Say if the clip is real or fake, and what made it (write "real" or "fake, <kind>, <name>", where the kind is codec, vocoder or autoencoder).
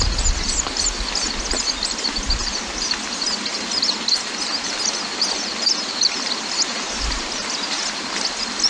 real